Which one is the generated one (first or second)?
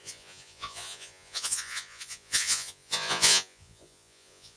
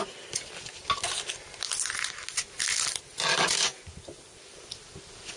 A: first